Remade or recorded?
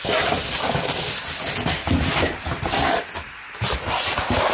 recorded